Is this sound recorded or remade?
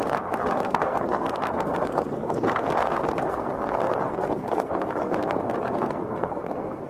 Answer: remade